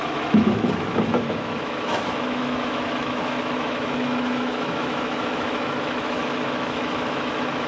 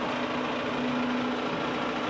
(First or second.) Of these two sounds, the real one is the second